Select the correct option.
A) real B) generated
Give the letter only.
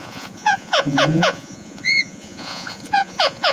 B